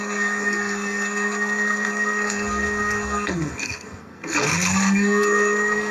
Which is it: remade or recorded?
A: remade